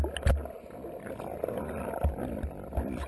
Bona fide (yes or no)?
yes